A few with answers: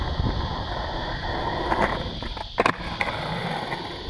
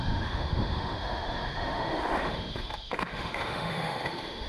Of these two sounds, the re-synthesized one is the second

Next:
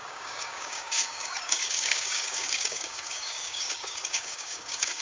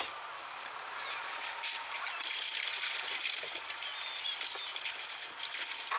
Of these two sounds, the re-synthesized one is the first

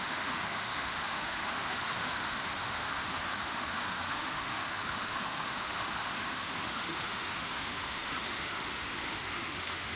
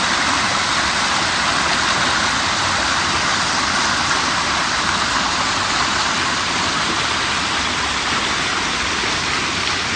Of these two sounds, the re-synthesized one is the first